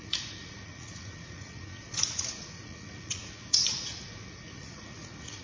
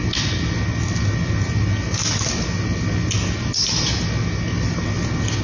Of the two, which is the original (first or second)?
second